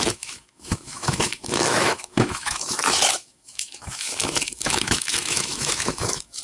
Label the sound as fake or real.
fake